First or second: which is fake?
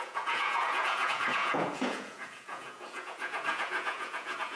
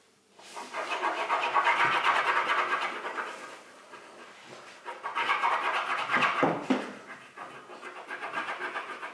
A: first